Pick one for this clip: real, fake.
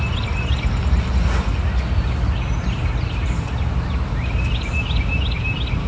real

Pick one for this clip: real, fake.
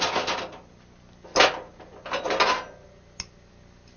real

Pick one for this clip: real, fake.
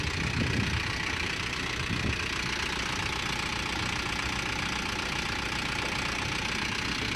real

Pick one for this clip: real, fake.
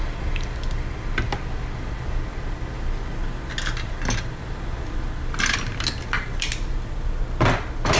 real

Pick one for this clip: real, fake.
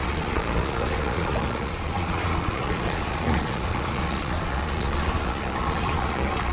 fake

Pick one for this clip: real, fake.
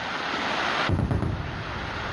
real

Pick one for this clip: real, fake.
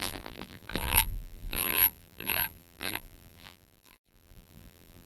fake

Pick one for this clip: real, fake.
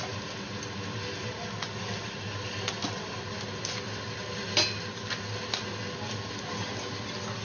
real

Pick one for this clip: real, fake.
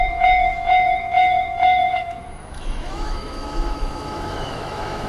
fake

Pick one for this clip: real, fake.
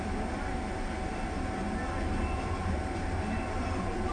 real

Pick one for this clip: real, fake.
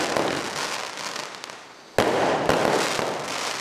real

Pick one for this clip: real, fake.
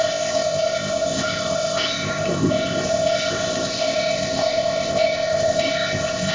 fake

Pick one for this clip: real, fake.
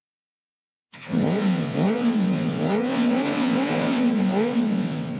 fake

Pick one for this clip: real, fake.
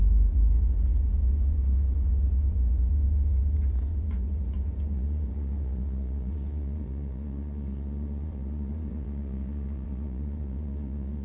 fake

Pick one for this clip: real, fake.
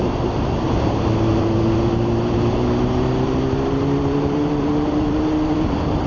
fake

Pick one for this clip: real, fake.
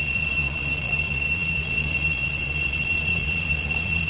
fake